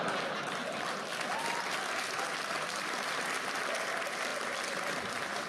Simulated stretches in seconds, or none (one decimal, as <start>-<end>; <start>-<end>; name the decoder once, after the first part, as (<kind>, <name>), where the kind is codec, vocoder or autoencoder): none